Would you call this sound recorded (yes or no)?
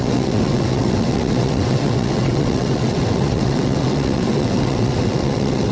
no